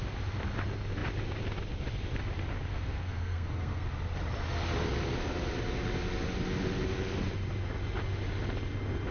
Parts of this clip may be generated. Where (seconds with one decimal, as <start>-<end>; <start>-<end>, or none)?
2.7-3.9